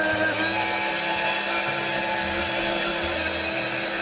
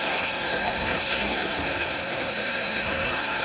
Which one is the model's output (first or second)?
second